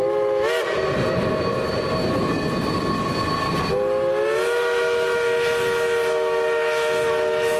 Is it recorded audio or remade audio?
recorded